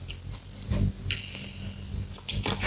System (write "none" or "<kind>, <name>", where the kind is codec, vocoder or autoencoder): none